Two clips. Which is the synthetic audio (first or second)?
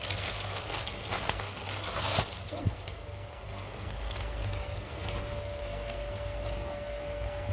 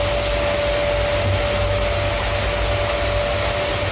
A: first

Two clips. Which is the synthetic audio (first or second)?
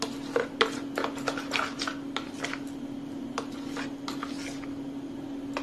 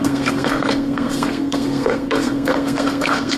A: second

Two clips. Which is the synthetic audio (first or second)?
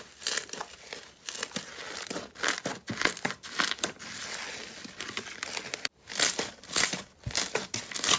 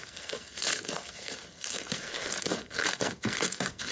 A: second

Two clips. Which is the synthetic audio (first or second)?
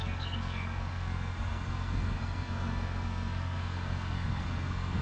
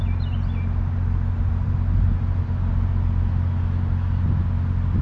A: first